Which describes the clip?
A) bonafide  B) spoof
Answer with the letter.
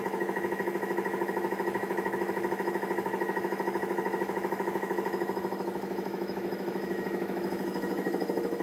B